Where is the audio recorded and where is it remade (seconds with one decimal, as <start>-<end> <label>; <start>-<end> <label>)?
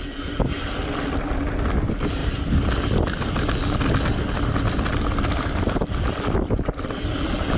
0.0-7.6 recorded